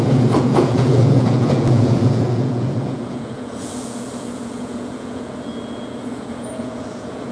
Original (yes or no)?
no